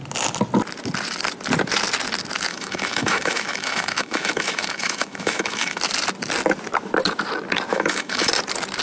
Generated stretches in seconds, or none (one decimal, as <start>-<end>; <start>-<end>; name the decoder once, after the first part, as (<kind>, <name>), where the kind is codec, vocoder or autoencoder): 2.5-5.8 (autoencoder, DAC-VAE); 7.7-8.3